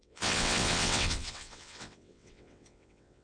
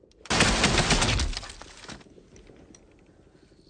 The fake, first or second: first